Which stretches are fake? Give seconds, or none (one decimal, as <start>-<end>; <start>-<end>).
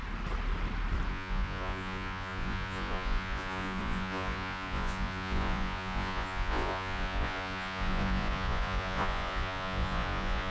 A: 1.1-10.5